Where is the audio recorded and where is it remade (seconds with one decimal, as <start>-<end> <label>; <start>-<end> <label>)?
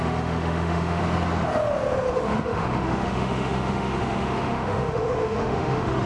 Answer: 0.0-1.0 remade; 1.0-2.1 recorded; 2.1-6.1 remade